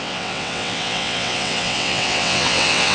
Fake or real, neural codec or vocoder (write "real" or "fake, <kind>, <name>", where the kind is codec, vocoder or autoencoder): fake, vocoder, WaveNeXt